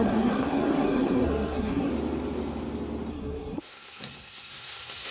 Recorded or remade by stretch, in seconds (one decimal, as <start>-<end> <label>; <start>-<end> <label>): 0.0-1.9 remade; 1.9-3.1 recorded; 3.1-5.1 remade

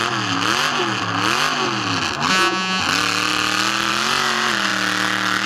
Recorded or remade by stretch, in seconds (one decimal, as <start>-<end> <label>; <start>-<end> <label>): 0.0-2.3 recorded; 2.3-2.8 remade; 2.8-5.5 recorded

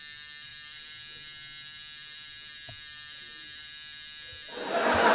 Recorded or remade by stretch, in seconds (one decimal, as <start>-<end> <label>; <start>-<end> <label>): 0.0-5.1 recorded

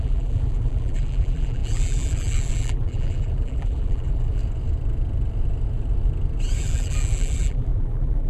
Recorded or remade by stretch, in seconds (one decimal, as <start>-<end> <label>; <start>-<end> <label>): 0.0-4.4 remade; 4.4-6.6 recorded; 6.6-8.3 remade

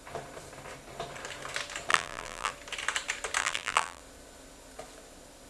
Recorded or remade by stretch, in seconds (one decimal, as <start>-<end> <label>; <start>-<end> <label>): 0.0-1.9 recorded; 1.9-2.5 remade; 2.5-3.4 recorded; 3.4-4.0 remade; 4.0-5.5 recorded

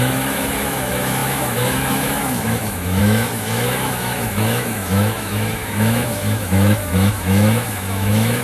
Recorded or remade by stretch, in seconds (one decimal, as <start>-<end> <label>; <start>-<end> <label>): 0.0-8.4 remade